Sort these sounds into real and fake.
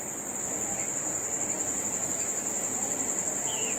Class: real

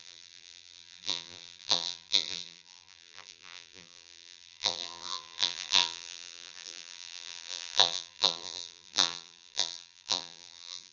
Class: fake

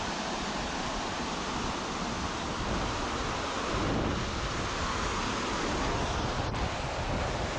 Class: real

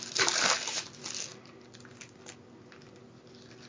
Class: real